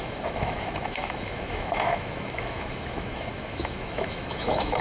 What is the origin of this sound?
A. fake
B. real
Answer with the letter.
A